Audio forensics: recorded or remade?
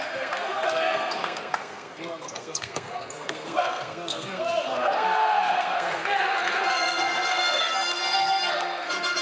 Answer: remade